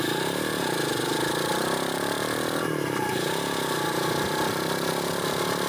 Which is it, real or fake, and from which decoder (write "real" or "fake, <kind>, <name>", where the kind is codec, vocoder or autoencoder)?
fake, vocoder, BigVGAN v2